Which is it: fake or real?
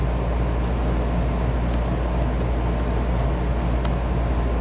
real